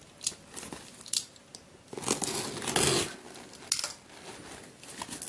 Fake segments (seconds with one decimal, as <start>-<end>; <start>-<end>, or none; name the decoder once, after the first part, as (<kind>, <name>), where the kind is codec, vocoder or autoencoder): none